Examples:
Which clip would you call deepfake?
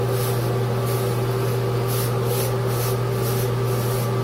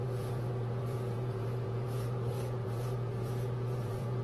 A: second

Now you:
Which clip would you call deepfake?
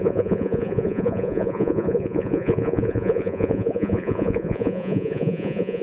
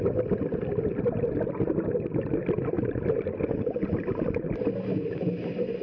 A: first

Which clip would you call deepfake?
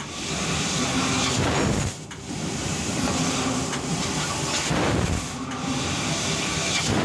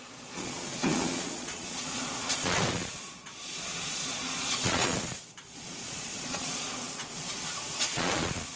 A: second